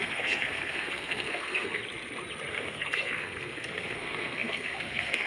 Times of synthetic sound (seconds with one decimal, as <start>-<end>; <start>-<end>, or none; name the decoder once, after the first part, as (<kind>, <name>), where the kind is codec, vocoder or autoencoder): 0.0-1.8 (codec, SNAC); 2.5-5.3